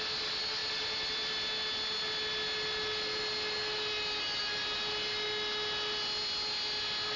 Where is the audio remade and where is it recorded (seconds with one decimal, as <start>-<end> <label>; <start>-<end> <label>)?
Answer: 0.0-7.2 recorded